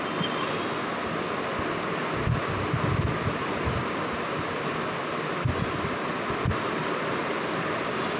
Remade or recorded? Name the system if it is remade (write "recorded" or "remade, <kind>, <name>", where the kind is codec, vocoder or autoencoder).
recorded